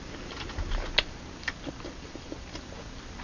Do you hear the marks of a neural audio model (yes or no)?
no